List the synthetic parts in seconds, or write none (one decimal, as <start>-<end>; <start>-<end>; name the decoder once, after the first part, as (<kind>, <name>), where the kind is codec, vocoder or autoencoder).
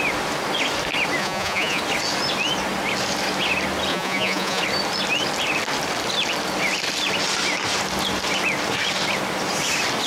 1.2-1.8 (vocoder, Vocos); 3.9-4.6